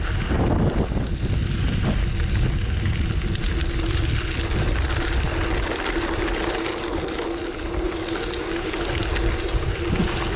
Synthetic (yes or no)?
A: no